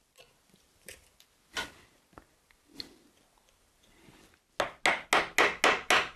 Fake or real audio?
real